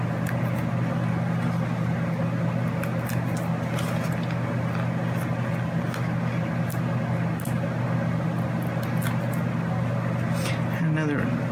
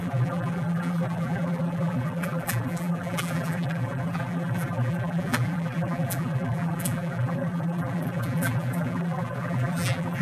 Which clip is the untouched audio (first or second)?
first